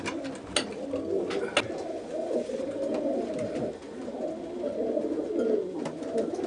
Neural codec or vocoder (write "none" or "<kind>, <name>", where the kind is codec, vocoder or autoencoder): none